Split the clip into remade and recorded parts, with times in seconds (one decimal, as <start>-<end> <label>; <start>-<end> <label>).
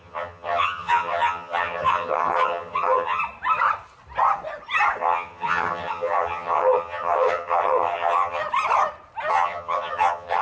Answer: 0.0-3.2 remade; 3.2-5.0 recorded; 5.0-8.4 remade; 8.4-9.3 recorded; 9.3-10.4 remade